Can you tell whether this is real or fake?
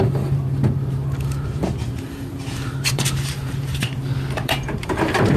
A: fake